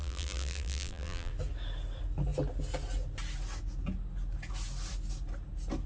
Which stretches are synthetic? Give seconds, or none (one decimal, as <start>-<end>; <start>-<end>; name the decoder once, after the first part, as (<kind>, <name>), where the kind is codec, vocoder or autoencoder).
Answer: 0.0-1.3 (vocoder, BigVGAN v2)